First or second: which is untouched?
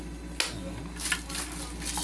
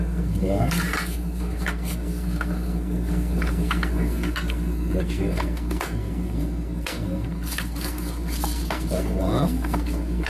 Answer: first